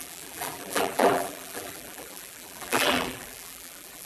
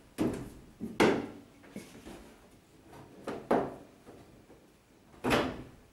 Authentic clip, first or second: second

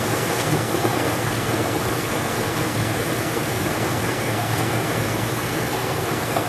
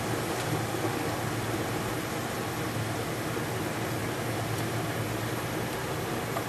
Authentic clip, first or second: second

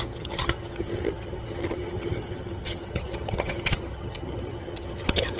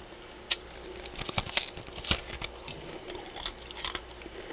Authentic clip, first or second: second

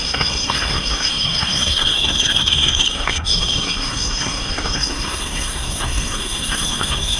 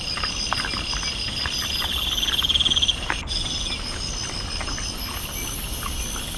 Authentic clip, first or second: second